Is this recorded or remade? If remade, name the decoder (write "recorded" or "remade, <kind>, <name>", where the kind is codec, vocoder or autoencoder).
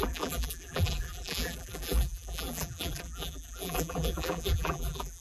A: remade, vocoder, BigVGAN v2